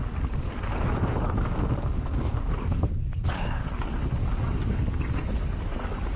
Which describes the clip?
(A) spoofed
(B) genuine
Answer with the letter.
A